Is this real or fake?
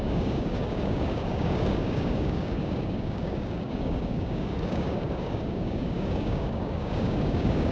fake